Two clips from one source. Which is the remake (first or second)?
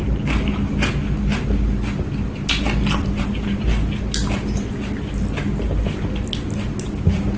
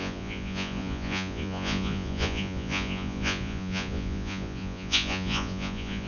second